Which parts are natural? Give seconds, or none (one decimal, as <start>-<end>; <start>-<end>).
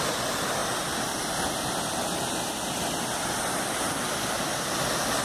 0.0-5.2